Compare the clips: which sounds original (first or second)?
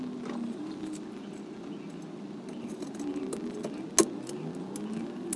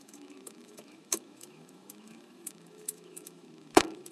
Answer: first